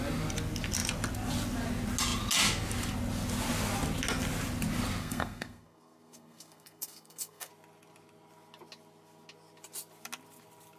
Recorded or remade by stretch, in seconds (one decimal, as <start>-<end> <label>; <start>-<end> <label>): 0.0-5.0 recorded; 5.0-7.5 remade; 7.5-10.8 recorded

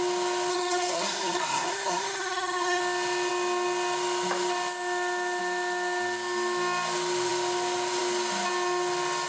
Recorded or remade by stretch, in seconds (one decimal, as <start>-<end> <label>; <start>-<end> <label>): 0.0-0.5 recorded; 0.5-2.8 remade; 2.8-9.3 recorded

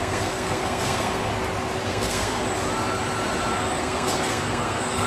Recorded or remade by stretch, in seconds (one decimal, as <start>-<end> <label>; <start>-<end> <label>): 0.0-1.3 remade; 1.3-1.9 recorded; 1.9-2.4 remade; 2.4-3.8 recorded; 3.8-5.1 remade